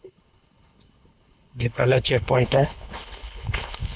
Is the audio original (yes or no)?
no